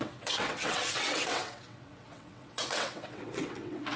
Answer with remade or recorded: remade